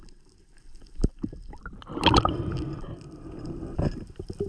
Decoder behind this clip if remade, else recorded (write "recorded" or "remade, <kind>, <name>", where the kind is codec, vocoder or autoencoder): recorded